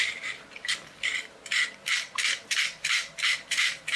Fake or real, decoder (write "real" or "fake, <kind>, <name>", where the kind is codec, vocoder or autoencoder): fake, vocoder, BigVGAN v2